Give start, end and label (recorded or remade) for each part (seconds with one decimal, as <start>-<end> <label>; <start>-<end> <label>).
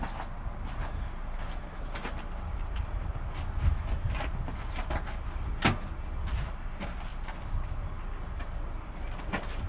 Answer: 0.0-9.7 recorded